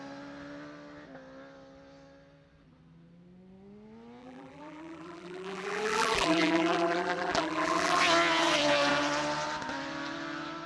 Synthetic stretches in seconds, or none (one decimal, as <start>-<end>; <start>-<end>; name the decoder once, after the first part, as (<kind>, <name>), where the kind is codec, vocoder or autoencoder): 4.2-8.0 (vocoder, BigVGAN v2)